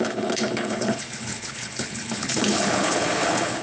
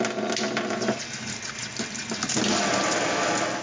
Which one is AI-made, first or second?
first